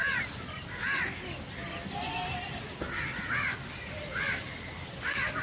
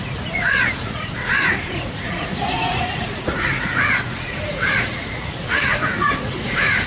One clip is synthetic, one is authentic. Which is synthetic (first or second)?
second